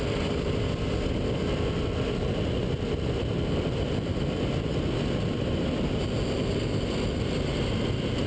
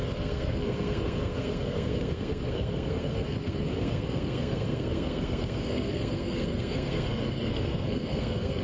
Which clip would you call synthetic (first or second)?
second